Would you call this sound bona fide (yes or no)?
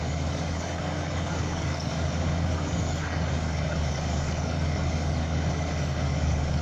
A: no